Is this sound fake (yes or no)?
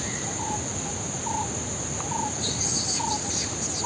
no